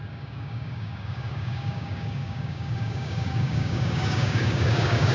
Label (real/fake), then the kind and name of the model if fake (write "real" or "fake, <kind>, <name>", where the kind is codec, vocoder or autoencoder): fake, codec, DAC